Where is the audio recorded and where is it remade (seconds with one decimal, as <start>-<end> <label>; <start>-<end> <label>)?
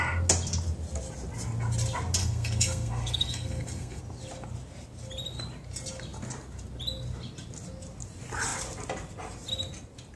0.0-2.2 recorded; 2.2-4.0 remade; 4.0-10.2 recorded